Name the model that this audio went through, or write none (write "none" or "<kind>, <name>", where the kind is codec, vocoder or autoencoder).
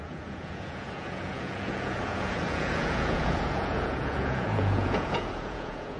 vocoder, Vocos